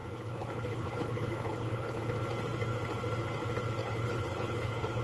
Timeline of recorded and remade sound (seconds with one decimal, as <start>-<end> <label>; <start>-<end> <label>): 0.0-2.0 remade; 2.0-3.8 recorded; 3.8-5.0 remade